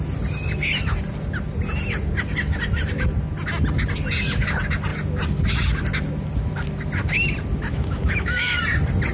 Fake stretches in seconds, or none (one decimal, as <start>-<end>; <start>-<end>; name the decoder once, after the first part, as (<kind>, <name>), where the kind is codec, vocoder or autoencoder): 7.7-8.6 (autoencoder, DAC-VAE)